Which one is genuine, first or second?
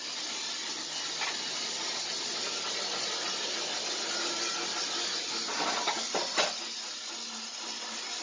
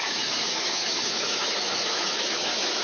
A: first